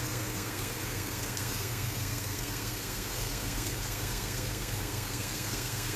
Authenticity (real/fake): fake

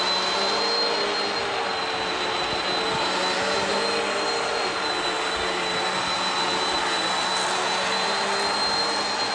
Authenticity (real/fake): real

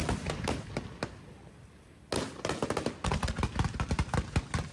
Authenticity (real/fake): real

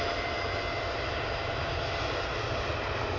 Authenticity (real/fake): real